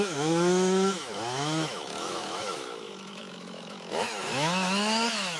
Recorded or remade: remade